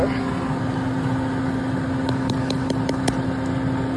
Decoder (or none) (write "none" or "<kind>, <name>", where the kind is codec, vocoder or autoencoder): none